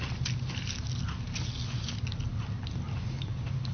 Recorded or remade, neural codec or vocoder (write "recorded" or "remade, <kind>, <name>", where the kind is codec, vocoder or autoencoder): recorded